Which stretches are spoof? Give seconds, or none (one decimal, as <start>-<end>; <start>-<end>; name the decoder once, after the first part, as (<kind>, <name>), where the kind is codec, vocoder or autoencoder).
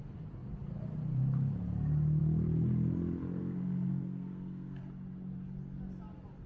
3.4-4.8 (codec, SNAC)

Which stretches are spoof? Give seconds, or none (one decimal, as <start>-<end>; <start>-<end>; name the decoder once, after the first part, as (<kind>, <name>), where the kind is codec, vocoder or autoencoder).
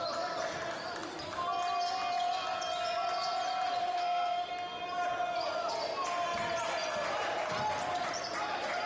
3.8-4.5 (codec, SNAC)